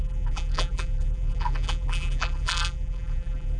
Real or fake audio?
fake